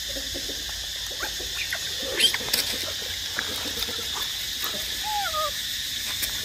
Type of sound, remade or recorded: recorded